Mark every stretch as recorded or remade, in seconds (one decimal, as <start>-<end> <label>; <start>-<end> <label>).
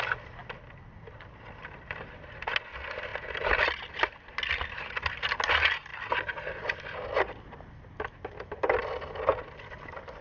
0.0-10.2 recorded